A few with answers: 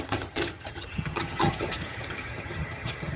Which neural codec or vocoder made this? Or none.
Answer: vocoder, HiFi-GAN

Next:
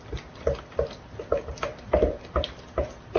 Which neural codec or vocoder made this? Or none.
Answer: none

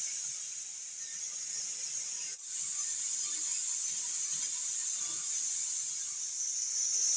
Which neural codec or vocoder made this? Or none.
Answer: none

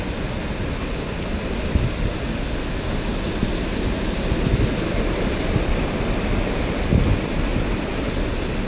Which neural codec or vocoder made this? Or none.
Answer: none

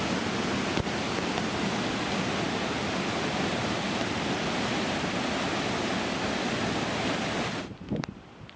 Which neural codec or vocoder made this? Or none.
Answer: none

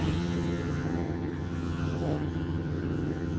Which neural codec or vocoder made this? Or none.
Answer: vocoder, HiFi-GAN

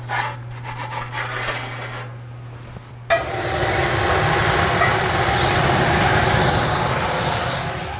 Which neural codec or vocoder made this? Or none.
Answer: none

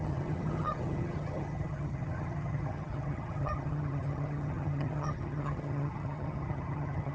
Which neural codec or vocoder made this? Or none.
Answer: vocoder, HiFi-GAN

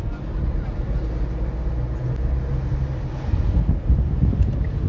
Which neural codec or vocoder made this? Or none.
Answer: none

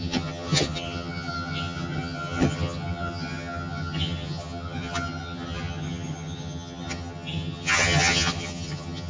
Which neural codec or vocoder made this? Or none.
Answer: vocoder, HiFi-GAN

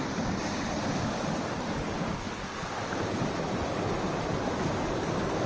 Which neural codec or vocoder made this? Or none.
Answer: none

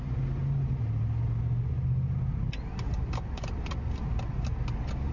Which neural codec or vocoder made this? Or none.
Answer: none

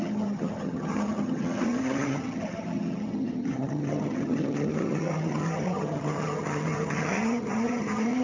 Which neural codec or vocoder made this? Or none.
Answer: vocoder, HiFi-GAN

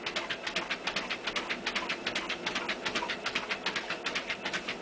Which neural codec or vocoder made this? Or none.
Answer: none